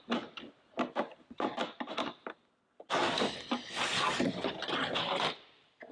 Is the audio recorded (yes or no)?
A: yes